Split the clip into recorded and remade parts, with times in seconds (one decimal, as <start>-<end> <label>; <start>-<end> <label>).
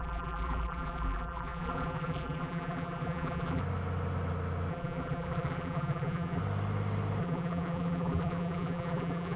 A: 0.0-3.6 remade; 3.6-4.7 recorded; 4.7-6.4 remade; 6.4-7.2 recorded; 7.2-9.4 remade